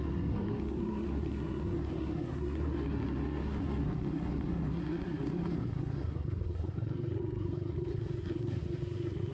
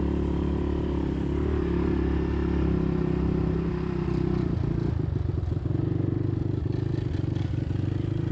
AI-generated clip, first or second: first